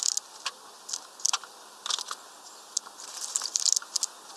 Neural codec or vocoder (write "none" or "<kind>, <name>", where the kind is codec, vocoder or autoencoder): none